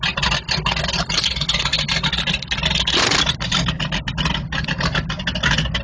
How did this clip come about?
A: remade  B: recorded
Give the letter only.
B